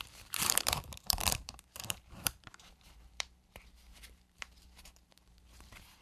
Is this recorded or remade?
remade